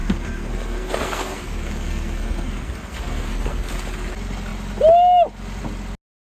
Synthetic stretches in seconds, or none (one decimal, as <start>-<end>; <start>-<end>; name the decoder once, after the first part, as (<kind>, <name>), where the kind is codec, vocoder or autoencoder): 0.0-3.7 (codec, SNAC)